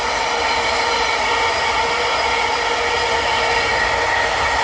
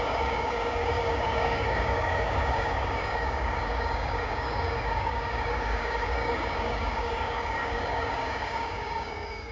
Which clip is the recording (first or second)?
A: first